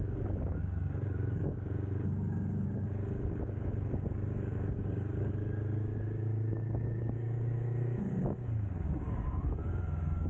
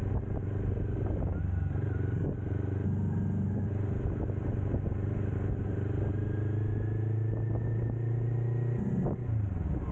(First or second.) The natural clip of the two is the second